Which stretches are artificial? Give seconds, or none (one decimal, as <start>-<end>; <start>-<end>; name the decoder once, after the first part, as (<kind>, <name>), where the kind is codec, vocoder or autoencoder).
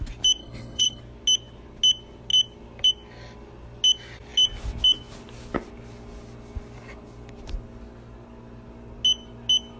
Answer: 0.4-1.0 (codec, HILCodec)